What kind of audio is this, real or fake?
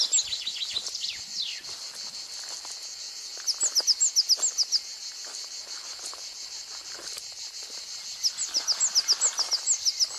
real